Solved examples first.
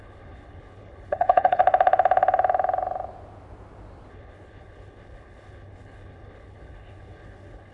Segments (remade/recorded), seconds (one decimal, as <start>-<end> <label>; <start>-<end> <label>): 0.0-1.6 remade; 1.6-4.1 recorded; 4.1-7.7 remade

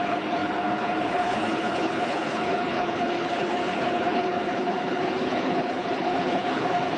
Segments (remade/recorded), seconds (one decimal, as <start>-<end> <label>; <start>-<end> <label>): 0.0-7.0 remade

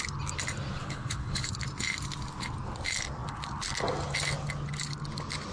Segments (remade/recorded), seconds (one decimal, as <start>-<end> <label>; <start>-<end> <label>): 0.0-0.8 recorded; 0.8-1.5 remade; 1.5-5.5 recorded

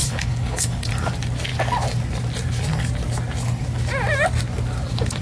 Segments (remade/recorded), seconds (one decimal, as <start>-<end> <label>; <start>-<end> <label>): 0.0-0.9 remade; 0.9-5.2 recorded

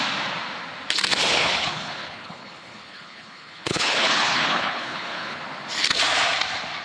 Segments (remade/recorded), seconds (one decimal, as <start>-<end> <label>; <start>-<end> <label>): 0.0-1.3 recorded; 1.3-5.4 remade; 5.4-6.8 recorded